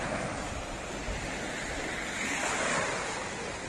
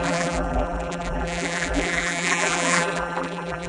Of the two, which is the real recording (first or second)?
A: first